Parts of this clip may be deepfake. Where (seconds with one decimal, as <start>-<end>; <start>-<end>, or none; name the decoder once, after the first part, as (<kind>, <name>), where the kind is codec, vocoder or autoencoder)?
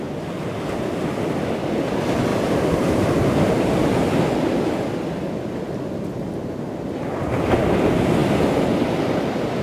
2.3-3.5 (vocoder, BigVGAN v2)